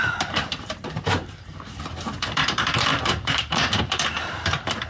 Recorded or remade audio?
remade